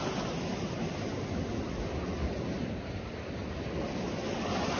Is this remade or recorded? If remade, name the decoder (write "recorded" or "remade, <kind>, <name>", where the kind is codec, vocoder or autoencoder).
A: recorded